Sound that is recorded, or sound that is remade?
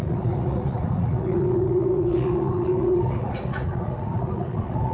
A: remade